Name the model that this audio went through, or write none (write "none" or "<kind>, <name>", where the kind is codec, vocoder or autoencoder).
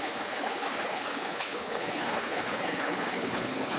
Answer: codec, HILCodec